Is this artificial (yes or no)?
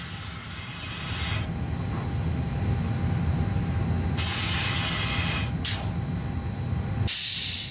no